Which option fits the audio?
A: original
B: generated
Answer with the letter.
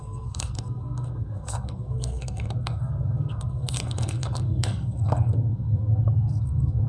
B